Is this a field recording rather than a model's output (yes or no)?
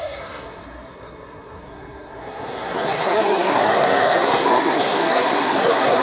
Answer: no